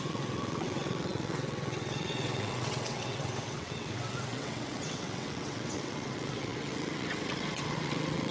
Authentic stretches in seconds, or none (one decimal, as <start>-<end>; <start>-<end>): none

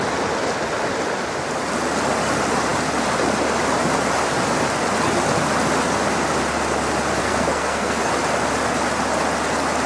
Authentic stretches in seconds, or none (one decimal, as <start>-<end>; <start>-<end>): 0.0-7.2; 8.1-9.9